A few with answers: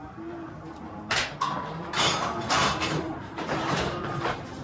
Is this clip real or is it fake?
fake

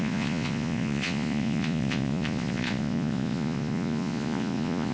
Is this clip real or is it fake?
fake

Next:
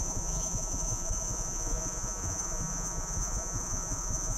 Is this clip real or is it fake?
fake